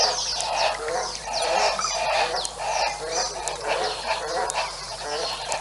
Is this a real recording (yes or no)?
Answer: no